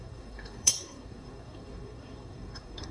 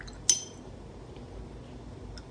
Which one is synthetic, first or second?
first